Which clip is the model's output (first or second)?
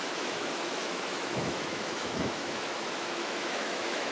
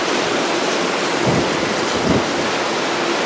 first